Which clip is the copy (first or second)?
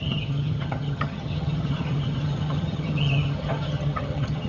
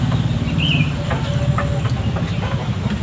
first